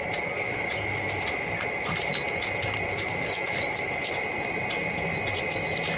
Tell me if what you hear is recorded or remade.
recorded